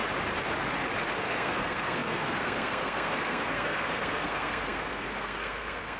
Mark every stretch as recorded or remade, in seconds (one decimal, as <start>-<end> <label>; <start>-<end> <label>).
0.0-1.1 recorded; 1.1-6.0 remade